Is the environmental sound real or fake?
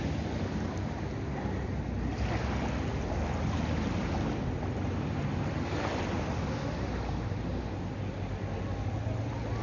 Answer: real